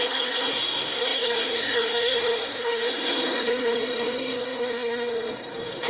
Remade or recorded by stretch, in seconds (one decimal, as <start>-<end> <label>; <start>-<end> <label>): 0.0-5.9 remade